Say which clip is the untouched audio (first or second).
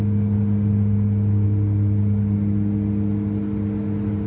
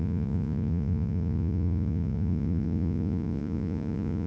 first